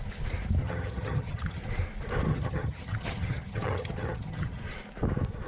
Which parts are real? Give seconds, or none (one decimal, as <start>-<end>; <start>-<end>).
0.0-0.6; 1.6-2.3; 4.6-5.5